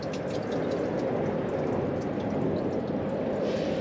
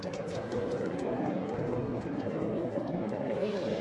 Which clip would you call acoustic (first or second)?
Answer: first